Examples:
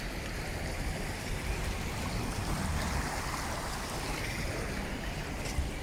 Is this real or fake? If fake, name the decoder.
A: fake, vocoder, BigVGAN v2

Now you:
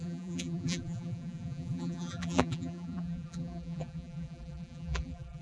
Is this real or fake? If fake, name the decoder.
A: fake, vocoder, BigVGAN v2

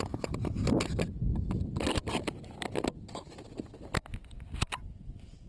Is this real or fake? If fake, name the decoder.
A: real